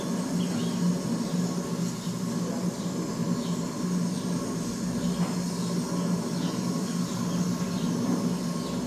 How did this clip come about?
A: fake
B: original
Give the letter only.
B